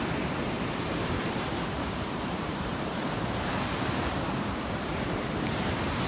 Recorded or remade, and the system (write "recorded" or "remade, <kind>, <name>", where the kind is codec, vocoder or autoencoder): remade, vocoder, BigVGAN v2